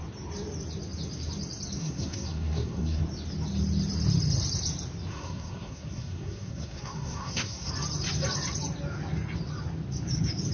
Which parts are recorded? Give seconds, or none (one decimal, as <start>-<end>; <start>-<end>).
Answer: 0.0-1.8; 3.0-5.1; 7.7-10.5

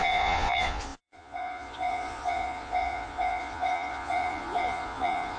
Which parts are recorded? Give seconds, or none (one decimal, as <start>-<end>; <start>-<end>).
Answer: none